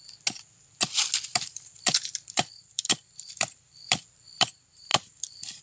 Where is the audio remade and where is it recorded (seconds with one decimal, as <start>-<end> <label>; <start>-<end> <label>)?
0.0-1.3 recorded; 1.3-4.5 remade; 4.5-4.9 recorded; 4.9-5.6 remade